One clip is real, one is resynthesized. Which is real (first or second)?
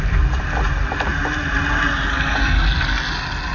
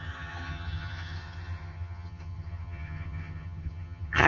first